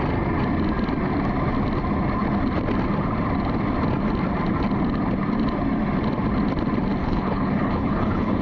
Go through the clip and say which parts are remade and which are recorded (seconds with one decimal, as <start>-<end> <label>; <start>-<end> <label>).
0.0-7.0 recorded; 7.0-8.4 remade

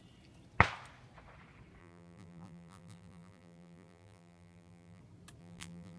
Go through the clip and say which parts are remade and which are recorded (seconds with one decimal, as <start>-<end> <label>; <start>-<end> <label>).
0.0-1.8 recorded; 1.8-5.0 remade; 5.0-5.4 recorded; 5.4-6.0 remade

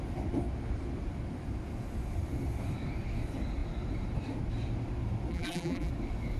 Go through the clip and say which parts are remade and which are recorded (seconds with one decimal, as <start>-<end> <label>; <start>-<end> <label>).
0.0-5.3 recorded; 5.3-5.9 remade; 5.9-6.4 recorded

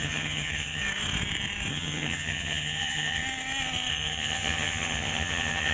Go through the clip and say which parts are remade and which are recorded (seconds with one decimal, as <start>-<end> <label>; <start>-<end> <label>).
0.0-0.8 remade; 0.8-1.7 recorded; 1.7-3.2 remade; 3.2-3.9 recorded; 3.9-5.7 remade

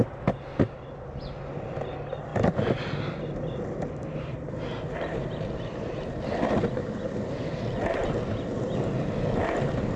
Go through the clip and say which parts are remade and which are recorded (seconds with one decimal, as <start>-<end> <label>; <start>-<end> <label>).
0.0-10.0 recorded

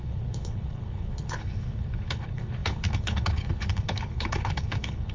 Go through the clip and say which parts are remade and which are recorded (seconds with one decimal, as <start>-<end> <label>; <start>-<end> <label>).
0.0-5.1 remade

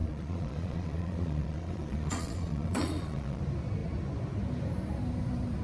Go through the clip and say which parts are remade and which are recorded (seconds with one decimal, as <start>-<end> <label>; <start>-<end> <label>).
0.0-3.4 remade; 3.4-5.6 recorded

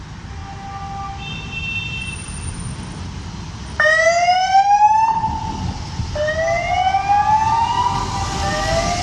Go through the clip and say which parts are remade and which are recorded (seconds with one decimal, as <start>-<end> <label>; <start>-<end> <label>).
0.0-9.0 recorded